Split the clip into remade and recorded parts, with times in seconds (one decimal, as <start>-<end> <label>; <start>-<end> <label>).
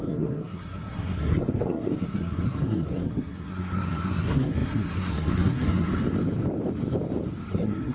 0.0-5.9 remade; 5.9-7.5 recorded; 7.5-7.9 remade